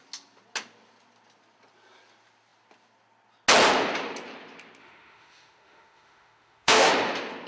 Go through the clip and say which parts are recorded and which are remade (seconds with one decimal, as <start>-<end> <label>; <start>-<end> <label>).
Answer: 0.0-4.8 recorded; 4.8-6.9 remade; 6.9-7.5 recorded